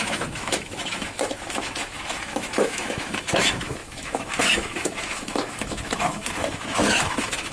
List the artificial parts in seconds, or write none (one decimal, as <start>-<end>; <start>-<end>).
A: 0.0-7.5